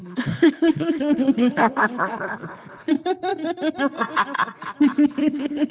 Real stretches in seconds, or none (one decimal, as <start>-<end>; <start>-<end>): 2.9-5.2